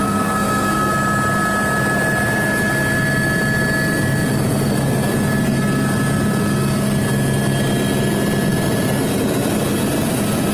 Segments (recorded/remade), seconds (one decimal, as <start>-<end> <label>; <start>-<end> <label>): 0.0-0.9 remade; 0.9-10.5 recorded